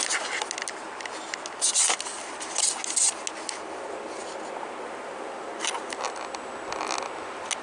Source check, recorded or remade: recorded